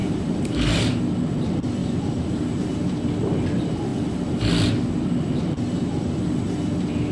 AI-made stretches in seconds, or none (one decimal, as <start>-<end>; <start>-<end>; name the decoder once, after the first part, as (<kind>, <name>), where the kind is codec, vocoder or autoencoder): 0.0-1.0 (vocoder, BigVGAN v2); 1.8-2.7